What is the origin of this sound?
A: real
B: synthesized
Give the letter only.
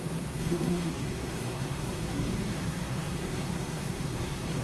B